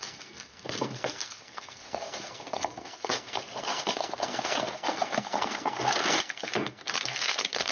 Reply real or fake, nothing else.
fake